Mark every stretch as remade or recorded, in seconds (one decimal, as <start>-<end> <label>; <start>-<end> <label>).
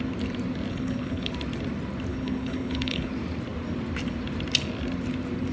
0.0-0.7 recorded; 0.7-1.3 remade; 1.3-2.1 recorded; 2.1-3.1 remade; 3.1-5.5 recorded